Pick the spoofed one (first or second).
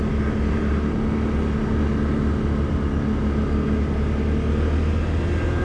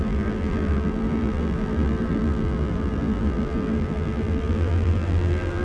second